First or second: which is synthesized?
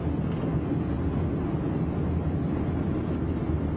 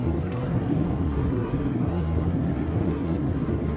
second